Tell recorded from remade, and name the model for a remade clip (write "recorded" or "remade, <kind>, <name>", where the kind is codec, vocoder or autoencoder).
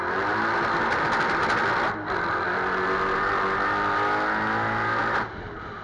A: recorded